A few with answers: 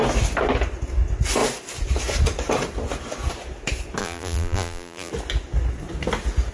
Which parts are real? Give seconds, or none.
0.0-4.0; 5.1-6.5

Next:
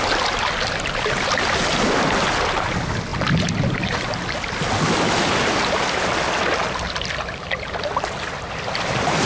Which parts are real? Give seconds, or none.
0.0-9.3

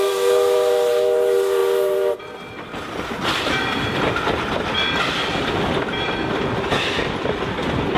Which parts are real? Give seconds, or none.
0.0-8.0

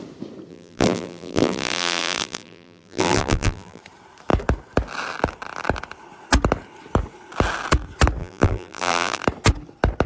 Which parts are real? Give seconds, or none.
0.0-0.5; 3.8-8.2; 9.2-10.1

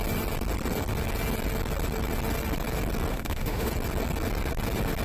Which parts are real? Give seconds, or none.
0.0-3.1; 3.7-5.0